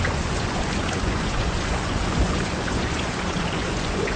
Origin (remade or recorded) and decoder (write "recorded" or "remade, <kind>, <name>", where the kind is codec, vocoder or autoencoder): remade, vocoder, Vocos